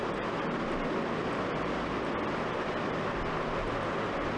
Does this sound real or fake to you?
real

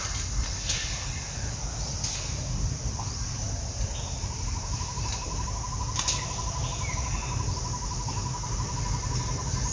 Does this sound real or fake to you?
real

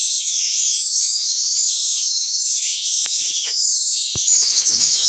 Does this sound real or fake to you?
fake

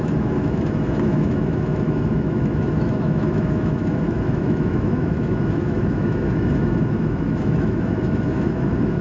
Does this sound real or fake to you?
fake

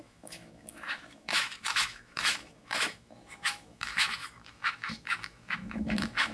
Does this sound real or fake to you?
fake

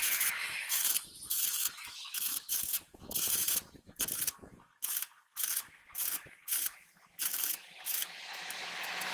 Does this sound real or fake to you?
fake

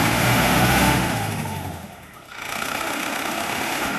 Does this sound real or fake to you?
fake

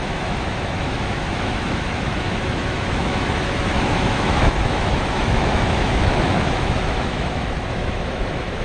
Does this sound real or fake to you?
fake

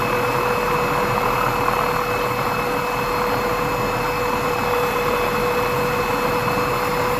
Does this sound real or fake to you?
real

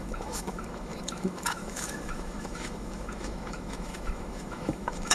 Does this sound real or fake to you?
fake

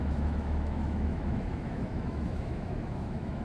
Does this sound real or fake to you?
fake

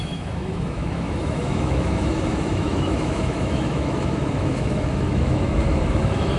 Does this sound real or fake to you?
fake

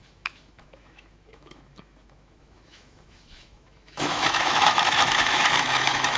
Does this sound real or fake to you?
fake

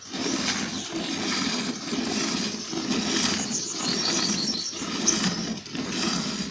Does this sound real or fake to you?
real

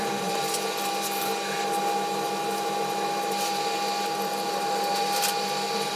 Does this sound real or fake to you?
real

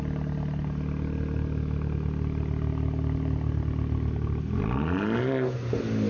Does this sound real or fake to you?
real